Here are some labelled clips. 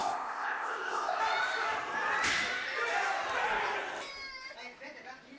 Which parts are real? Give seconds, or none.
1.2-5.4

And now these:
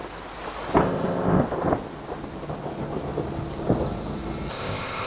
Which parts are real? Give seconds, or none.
0.0-0.8; 1.4-4.5

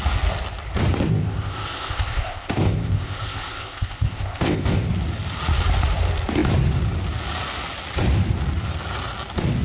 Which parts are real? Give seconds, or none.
0.0-1.1; 4.9-9.6